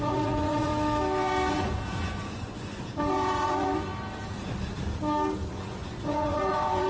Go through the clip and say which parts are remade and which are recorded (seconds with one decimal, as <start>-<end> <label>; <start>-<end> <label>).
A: 0.0-0.7 remade; 0.7-1.5 recorded; 1.5-3.9 remade; 3.9-5.5 recorded; 5.5-6.9 remade